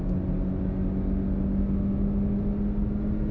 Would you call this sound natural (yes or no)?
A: yes